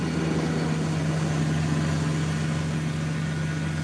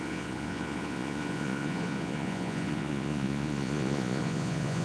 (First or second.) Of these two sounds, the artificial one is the second